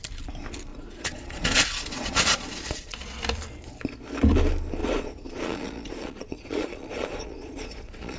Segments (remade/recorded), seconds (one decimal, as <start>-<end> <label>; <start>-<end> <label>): 0.0-0.7 recorded; 0.7-3.2 remade; 3.2-4.8 recorded; 4.8-8.2 remade